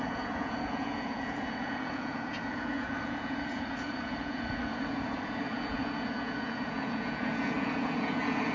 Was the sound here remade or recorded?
remade